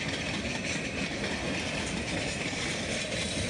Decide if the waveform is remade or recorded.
remade